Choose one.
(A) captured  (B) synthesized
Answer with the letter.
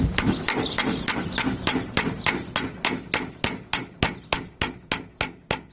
A